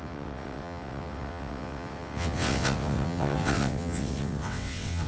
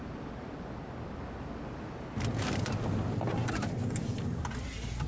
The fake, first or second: first